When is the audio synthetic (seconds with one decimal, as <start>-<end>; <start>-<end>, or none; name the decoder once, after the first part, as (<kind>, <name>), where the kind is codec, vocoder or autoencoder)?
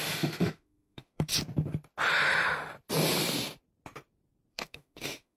0.0-1.3 (autoencoder, DAC-VAE); 4.5-5.4